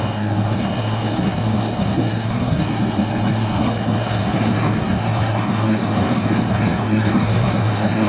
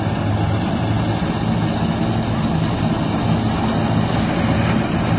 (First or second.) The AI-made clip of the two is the first